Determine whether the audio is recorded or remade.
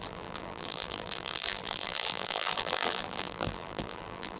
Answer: remade